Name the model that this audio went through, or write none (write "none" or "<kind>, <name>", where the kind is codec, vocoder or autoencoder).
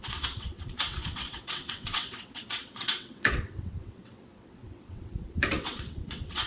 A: vocoder, WaveNeXt